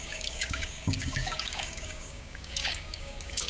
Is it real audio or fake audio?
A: fake